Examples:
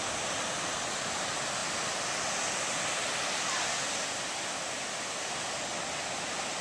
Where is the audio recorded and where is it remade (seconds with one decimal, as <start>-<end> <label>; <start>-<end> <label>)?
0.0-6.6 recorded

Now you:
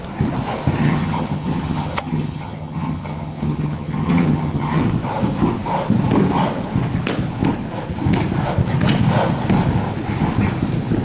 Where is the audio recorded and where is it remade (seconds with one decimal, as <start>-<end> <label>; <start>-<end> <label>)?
0.0-0.8 recorded; 0.8-4.8 remade; 4.8-11.0 recorded

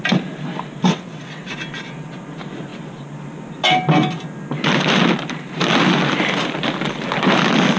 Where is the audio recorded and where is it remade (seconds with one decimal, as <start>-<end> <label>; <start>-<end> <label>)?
0.0-0.9 recorded; 0.9-1.5 remade; 1.5-7.8 recorded

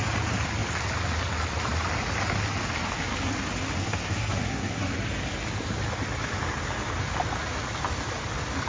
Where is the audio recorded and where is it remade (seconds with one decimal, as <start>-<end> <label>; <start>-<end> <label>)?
0.0-3.8 recorded; 3.8-4.9 remade; 4.9-8.7 recorded

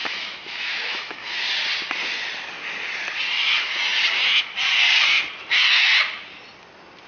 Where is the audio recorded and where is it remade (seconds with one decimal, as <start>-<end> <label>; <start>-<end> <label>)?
0.0-1.4 remade; 1.4-7.1 recorded